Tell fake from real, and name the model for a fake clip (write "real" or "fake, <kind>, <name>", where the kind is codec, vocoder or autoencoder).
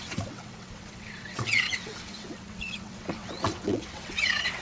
fake, vocoder, WaveNeXt